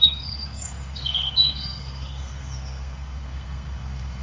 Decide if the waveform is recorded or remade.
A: remade